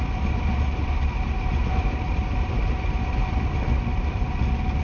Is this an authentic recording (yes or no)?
yes